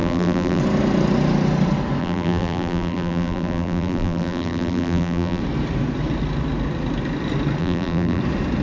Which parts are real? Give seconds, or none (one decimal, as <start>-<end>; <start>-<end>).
0.6-2.0; 5.4-7.6; 8.2-8.6